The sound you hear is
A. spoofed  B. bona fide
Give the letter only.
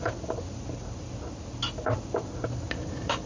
B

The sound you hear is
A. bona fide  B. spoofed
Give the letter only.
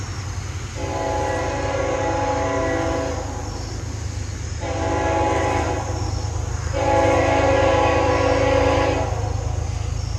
A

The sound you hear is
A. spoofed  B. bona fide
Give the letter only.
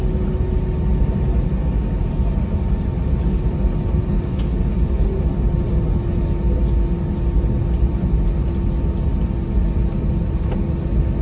B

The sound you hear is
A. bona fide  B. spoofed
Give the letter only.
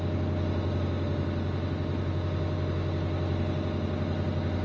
A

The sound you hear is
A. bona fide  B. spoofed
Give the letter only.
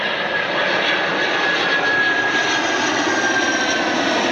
B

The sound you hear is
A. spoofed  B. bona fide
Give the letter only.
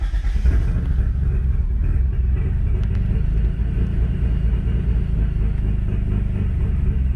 B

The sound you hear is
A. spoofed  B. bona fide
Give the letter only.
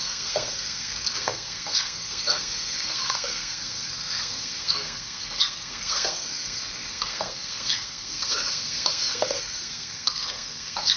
A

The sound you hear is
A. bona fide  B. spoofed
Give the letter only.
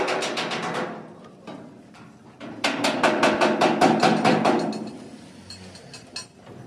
A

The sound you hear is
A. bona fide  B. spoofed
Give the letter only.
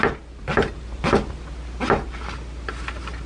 A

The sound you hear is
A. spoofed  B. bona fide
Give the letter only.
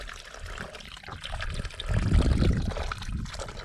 A